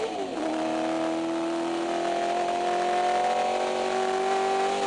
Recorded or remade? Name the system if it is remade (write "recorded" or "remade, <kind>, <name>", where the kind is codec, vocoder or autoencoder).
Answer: recorded